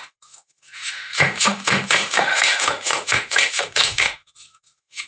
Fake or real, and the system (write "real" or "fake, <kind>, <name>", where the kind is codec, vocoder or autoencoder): fake, autoencoder, DAC-VAE